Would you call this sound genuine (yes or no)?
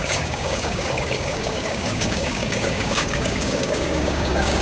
no